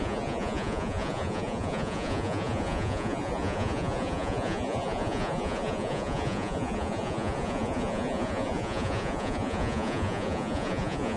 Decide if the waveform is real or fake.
fake